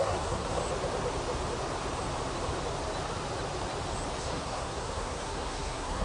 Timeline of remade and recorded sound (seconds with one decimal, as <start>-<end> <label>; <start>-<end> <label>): 0.0-0.6 remade; 0.6-4.2 recorded; 4.2-6.0 remade